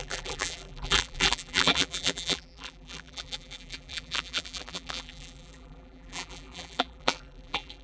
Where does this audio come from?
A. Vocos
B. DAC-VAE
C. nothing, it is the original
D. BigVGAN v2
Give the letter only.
D